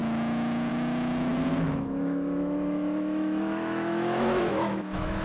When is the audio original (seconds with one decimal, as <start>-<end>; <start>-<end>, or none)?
none